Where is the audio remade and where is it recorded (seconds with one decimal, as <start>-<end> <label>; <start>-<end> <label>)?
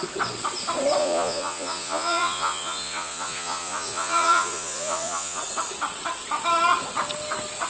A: 0.0-1.0 recorded; 1.0-5.4 remade; 5.4-7.7 recorded